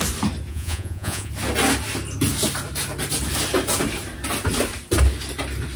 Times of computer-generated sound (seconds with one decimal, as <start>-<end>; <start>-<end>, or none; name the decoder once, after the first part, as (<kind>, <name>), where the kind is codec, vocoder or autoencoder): 0.5-1.3 (vocoder, Vocos)